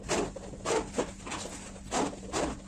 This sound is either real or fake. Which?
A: real